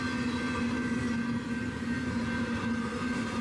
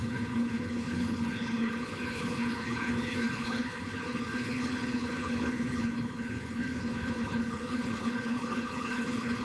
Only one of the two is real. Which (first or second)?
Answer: first